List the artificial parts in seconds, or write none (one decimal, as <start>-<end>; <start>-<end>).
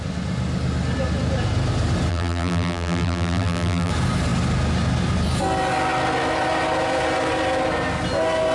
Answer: 2.1-3.9